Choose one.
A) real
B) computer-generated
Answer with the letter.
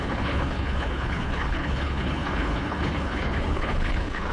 B